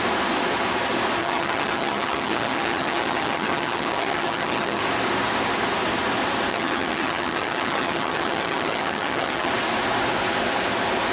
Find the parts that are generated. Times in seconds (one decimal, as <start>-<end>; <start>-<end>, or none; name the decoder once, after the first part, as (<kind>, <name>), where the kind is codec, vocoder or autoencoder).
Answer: 1.2-4.8 (vocoder, HiFi-GAN); 6.5-9.5